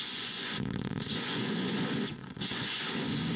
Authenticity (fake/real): fake